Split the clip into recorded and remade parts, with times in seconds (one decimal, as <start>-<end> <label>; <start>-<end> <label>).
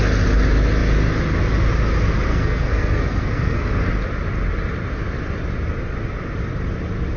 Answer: 0.0-2.3 recorded; 2.3-3.7 remade; 3.7-7.2 recorded